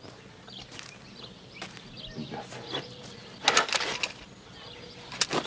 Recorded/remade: recorded